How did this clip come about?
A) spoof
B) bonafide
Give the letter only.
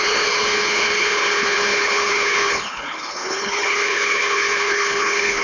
A